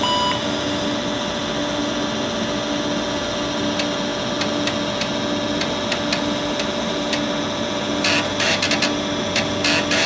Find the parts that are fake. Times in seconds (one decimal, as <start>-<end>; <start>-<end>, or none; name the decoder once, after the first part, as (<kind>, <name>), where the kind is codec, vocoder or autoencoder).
none